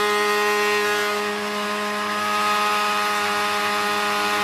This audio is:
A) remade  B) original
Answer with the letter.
B